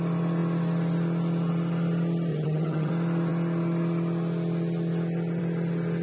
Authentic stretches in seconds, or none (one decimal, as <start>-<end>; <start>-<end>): 0.0-2.3; 2.9-6.0